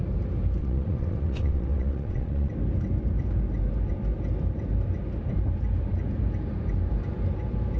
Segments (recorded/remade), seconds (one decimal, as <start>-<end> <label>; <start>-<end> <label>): 0.0-0.6 recorded; 0.6-2.5 remade; 2.5-7.8 recorded